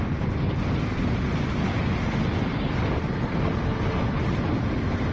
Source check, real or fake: real